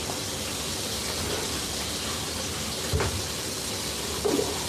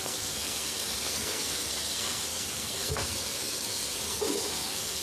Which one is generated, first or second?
second